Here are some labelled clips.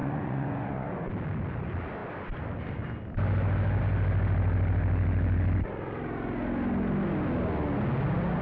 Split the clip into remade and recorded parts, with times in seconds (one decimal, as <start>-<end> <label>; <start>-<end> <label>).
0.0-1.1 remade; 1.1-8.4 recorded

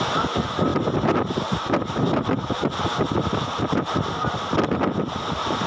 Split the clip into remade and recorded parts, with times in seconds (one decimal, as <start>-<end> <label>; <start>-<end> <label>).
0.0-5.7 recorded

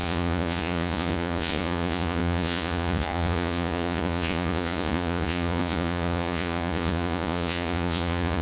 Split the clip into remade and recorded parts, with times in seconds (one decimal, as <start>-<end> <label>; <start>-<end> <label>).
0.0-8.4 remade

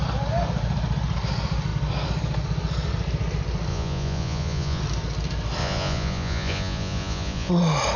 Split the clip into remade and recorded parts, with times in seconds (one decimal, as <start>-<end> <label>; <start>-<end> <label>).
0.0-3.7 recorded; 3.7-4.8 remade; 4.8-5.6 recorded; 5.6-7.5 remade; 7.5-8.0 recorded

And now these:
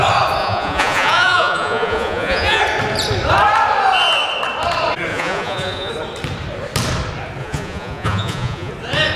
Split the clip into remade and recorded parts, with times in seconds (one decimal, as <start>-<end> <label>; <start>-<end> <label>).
0.0-0.4 recorded; 0.4-2.6 remade; 2.6-5.1 recorded; 5.1-5.9 remade; 5.9-7.4 recorded; 7.4-8.7 remade; 8.7-9.2 recorded

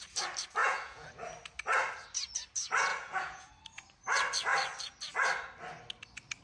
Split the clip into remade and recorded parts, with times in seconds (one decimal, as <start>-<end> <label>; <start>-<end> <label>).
0.0-0.6 recorded; 0.6-1.1 remade; 1.1-2.9 recorded; 2.9-3.5 remade; 3.5-6.4 recorded